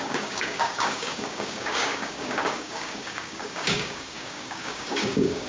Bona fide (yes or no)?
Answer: no